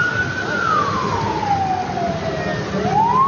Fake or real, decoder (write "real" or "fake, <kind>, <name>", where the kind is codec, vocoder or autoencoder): real